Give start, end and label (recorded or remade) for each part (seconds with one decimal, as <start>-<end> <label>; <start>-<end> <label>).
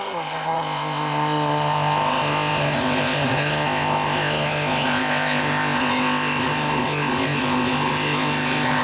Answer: 0.0-8.8 remade